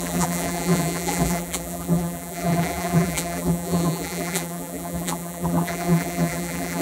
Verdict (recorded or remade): remade